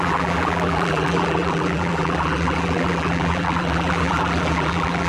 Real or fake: fake